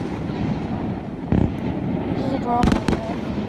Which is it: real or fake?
fake